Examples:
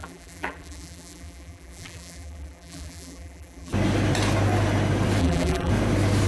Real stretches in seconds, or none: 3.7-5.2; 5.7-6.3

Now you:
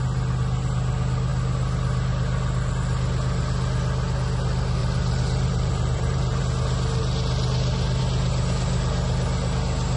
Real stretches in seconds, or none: 0.0-4.8; 6.4-10.0

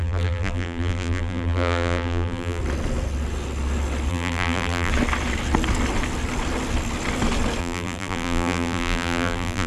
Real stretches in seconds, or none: 2.6-4.1; 4.9-7.6

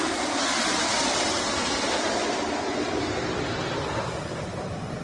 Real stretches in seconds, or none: none

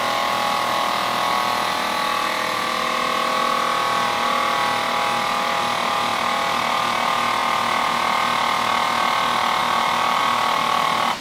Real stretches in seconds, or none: 0.0-9.6; 10.2-11.2

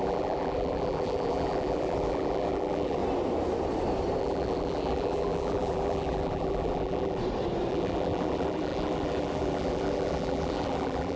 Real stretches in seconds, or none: 3.0-4.2; 7.2-7.7

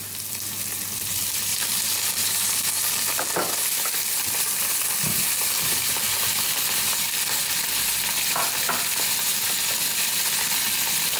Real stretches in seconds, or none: 0.0-1.5; 3.2-5.1; 5.9-11.2

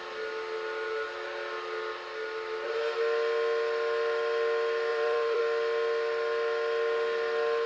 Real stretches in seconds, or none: 0.0-4.9; 5.4-7.7